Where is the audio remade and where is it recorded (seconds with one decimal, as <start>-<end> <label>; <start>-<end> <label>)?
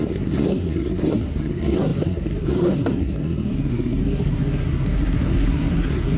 0.0-6.2 remade